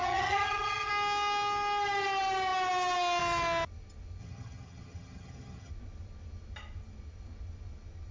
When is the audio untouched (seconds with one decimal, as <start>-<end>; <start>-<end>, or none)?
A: 0.9-4.2; 5.7-8.1